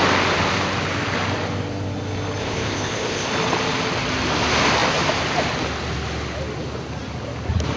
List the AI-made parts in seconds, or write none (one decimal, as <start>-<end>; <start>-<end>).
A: 2.4-3.3